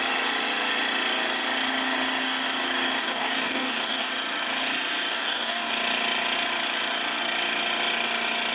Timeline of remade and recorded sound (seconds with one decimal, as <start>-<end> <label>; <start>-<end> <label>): 0.0-3.0 recorded; 3.0-4.1 remade; 4.1-5.1 recorded; 5.1-5.7 remade; 5.7-8.5 recorded